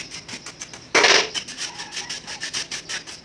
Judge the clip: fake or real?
real